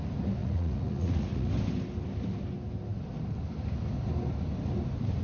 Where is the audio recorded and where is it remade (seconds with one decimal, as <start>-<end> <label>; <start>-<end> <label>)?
0.0-0.4 recorded; 0.4-1.5 remade; 1.5-5.2 recorded